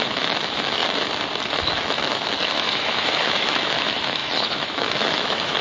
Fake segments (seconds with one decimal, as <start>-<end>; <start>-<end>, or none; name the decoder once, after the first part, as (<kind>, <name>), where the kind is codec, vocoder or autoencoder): 0.0-0.8 (autoencoder, DAC-VAE); 1.6-5.6